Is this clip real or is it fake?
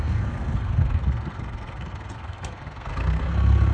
fake